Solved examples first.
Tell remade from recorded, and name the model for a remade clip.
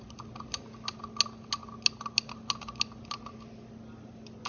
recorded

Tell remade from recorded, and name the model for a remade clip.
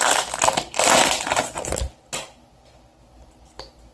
recorded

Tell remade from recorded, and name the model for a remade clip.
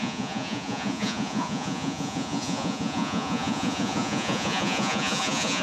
remade, vocoder, Vocos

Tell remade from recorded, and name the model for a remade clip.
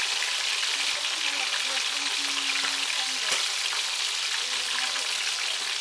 recorded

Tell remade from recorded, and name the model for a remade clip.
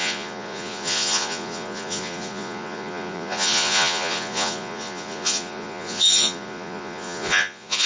remade, vocoder, Vocos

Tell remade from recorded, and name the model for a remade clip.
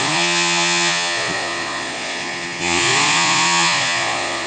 remade, vocoder, Vocos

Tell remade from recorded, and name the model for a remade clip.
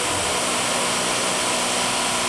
recorded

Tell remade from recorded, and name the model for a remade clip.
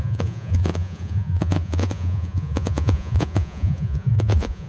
remade, vocoder, Vocos